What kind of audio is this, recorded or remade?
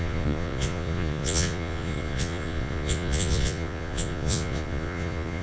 remade